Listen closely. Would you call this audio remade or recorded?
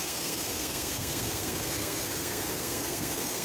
remade